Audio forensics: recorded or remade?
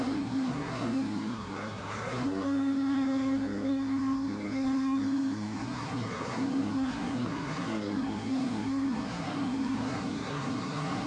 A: remade